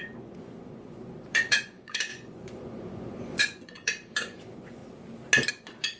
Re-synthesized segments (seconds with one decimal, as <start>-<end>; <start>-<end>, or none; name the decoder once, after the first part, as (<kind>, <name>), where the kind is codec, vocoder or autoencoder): 0.0-4.8 (vocoder, Vocos); 5.5-6.0